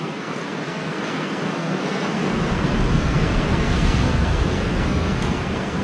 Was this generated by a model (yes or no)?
yes